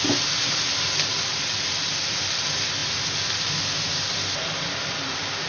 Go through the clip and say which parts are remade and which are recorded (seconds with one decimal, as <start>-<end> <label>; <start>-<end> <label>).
0.0-2.8 remade; 2.8-3.9 recorded; 3.9-5.5 remade